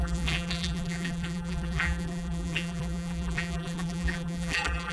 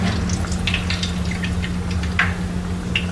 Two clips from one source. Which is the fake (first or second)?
first